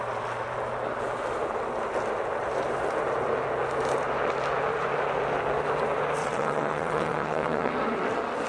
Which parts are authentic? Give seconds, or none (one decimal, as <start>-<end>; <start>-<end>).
0.0-6.2; 7.7-8.5

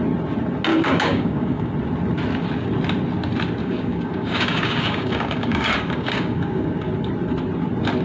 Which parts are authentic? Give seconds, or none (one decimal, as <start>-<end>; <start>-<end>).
0.0-0.7; 1.7-3.6; 6.9-8.0

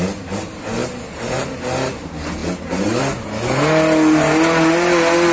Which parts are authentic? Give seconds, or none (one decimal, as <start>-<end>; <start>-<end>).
0.0-5.3

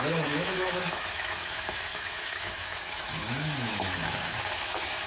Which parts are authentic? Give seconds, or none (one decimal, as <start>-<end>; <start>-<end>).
none

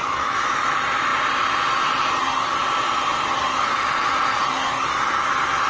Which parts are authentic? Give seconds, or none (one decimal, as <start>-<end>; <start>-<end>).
0.7-5.7

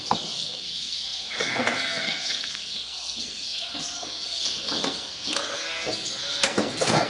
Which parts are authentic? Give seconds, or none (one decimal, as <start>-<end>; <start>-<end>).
none

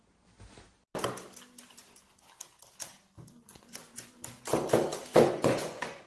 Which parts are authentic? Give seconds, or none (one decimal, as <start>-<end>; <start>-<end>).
0.0-3.5; 4.1-5.1